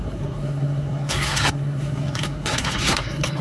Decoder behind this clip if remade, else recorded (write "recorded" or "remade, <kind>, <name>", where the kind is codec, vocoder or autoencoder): remade, codec, SNAC